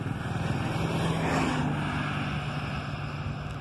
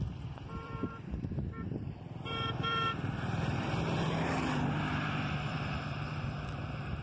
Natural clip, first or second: first